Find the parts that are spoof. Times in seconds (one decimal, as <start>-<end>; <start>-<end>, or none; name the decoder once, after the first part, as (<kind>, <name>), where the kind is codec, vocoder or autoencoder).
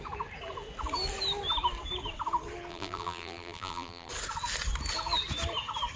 2.7-4.1 (vocoder, BigVGAN v2)